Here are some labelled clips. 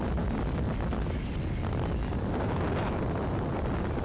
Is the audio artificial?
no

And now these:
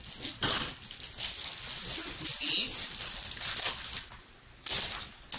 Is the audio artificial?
no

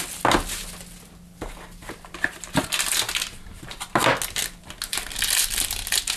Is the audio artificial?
no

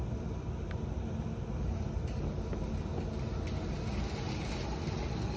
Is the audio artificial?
no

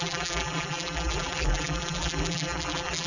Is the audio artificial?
yes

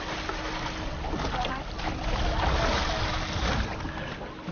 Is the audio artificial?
no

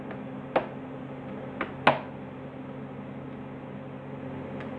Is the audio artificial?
no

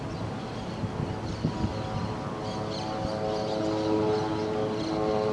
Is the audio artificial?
no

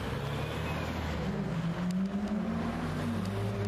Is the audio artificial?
no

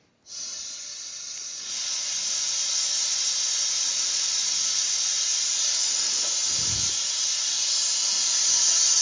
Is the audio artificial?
no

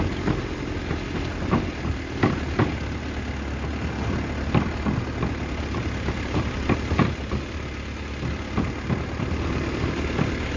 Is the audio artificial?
no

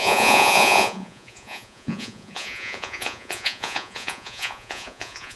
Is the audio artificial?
yes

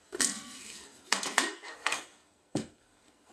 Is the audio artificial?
yes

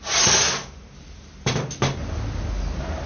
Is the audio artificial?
no